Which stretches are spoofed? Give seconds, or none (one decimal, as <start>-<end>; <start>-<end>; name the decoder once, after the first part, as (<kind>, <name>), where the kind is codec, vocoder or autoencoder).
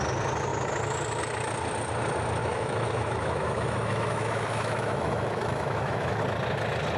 2.4-6.2 (autoencoder, DAC-VAE)